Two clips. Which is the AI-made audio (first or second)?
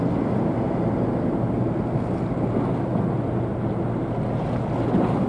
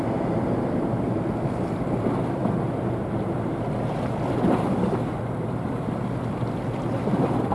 second